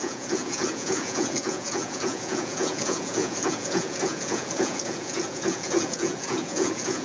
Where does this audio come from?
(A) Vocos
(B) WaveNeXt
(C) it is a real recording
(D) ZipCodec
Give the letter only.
A